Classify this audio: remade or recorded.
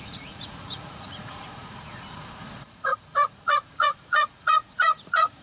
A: remade